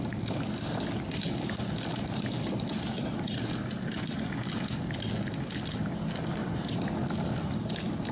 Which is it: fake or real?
real